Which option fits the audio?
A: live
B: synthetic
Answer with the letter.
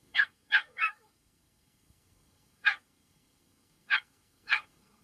B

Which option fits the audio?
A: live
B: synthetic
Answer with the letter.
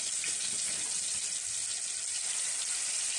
A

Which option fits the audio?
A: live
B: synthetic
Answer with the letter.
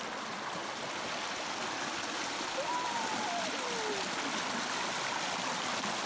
A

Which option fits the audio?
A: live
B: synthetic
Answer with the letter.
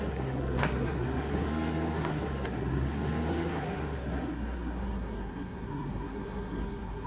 B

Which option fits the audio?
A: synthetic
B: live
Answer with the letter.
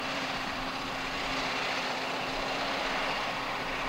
A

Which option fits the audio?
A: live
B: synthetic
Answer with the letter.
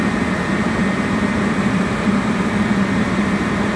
B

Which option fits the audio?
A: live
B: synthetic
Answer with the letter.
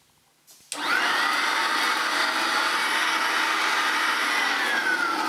A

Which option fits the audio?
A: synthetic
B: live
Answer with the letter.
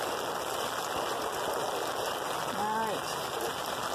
B